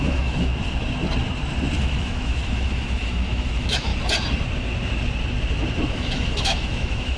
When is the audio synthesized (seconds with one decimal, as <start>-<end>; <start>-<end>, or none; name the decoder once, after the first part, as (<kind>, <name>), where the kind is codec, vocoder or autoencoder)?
0.0-0.5 (autoencoder, DAC-VAE); 1.8-3.9; 5.9-7.2